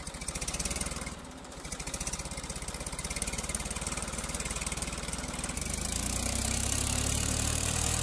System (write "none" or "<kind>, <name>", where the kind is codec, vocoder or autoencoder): vocoder, BigVGAN v2